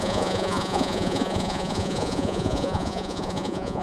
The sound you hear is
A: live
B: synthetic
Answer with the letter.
B